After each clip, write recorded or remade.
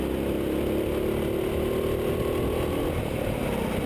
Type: recorded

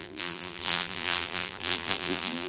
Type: remade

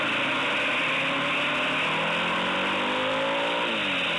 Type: recorded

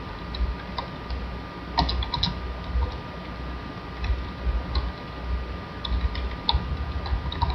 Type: recorded